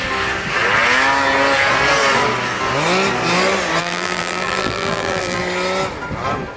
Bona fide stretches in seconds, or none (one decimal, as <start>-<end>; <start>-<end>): 0.0-3.8; 5.4-6.6